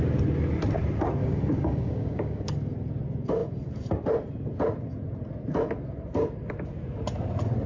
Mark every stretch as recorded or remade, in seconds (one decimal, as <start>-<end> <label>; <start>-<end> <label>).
0.0-1.2 recorded; 1.2-2.5 remade; 2.5-7.7 recorded